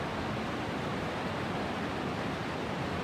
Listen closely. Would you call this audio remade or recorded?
remade